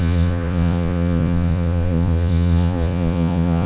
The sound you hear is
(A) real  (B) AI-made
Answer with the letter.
B